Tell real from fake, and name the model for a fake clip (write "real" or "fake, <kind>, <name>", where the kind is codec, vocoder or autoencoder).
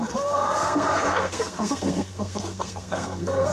fake, codec, SNAC